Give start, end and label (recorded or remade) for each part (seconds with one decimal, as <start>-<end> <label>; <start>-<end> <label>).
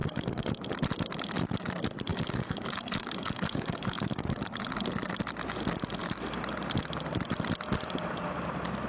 0.0-0.5 remade; 0.5-2.1 recorded; 2.1-4.7 remade; 4.7-8.9 recorded